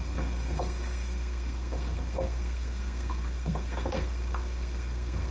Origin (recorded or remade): remade